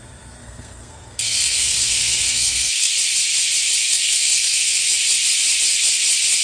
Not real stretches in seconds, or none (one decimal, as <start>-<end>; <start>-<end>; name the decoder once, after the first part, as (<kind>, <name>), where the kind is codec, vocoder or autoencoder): 0.4-2.9 (codec, SNAC); 3.9-4.9